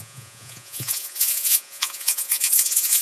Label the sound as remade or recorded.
remade